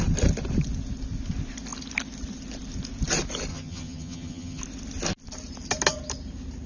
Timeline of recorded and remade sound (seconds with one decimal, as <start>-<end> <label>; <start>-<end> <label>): 0.0-3.5 recorded; 3.5-4.6 remade; 4.6-6.7 recorded